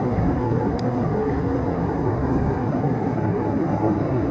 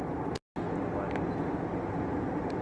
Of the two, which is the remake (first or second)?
first